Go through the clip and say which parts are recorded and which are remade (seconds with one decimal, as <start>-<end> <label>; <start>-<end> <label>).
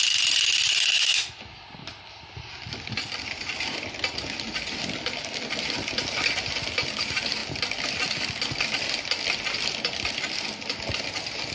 0.0-11.5 recorded